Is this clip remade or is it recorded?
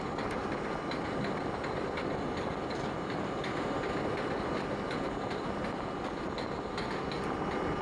recorded